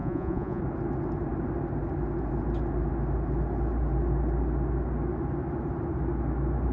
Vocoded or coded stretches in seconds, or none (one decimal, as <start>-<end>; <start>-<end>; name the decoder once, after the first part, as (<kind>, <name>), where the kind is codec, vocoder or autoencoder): 0.0-0.6 (vocoder, Vocos)